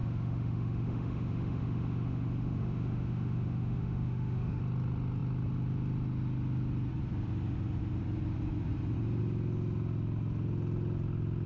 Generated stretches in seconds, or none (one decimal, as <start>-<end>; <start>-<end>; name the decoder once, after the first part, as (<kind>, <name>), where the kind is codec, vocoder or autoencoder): 0.0-4.6 (autoencoder, DAC-VAE)